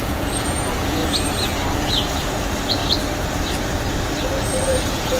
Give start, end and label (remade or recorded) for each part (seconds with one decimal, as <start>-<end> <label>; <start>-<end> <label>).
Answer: 0.0-1.0 remade; 1.0-2.2 recorded; 2.2-2.8 remade; 2.8-4.6 recorded; 4.6-5.2 remade